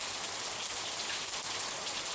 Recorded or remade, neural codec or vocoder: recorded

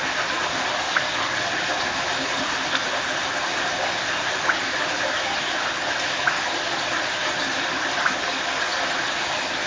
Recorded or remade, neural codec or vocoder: recorded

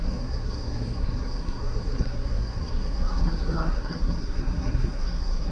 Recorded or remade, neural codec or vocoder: remade, codec, SNAC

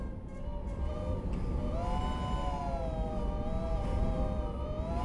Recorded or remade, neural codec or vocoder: recorded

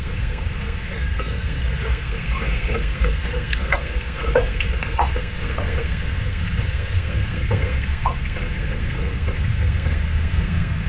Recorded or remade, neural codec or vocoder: remade, codec, SNAC